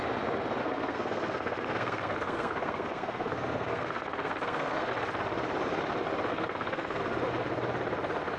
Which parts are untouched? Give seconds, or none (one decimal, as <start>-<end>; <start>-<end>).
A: 0.0-0.6; 4.9-6.3; 7.0-8.4